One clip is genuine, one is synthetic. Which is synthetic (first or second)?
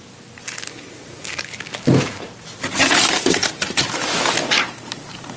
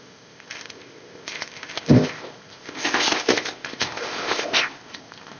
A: second